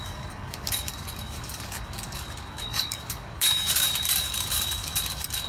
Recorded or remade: remade